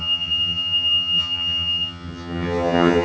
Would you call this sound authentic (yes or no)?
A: no